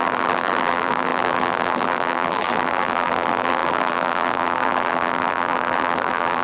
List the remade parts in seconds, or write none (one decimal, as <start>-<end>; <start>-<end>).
0.0-6.4